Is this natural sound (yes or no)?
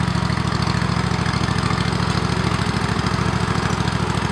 yes